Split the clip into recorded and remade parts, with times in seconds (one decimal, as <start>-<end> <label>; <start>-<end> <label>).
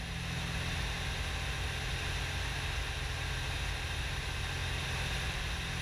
0.0-5.8 recorded